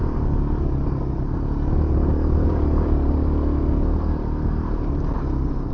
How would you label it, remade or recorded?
recorded